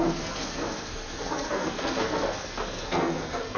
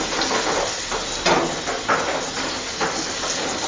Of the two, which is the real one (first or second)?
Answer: second